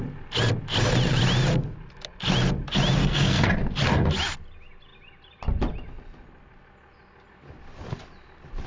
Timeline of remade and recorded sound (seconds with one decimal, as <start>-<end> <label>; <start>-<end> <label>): 0.0-3.0 recorded; 3.0-3.5 remade; 3.5-8.7 recorded